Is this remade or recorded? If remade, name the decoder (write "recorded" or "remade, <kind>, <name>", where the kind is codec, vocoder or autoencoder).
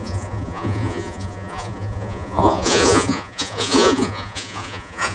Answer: remade, vocoder, Vocos